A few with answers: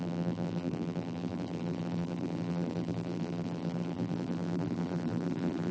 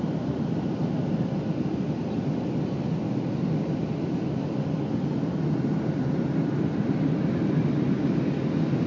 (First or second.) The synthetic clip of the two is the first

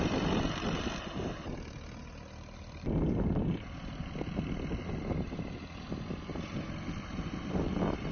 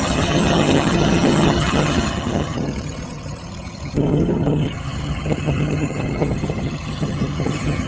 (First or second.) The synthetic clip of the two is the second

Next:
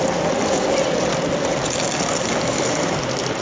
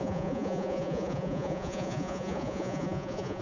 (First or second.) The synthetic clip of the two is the second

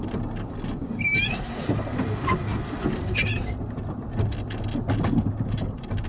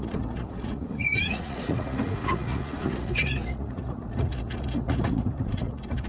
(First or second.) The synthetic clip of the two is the second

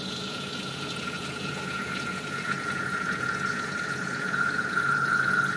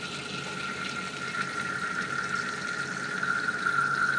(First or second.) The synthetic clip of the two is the first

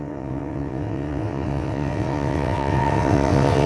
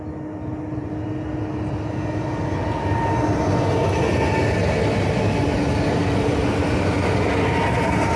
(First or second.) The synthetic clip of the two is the first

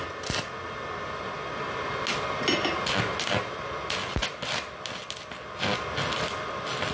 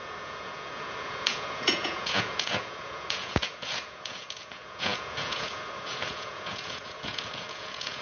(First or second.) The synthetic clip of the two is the second